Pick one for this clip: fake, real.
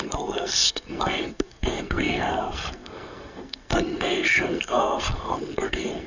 fake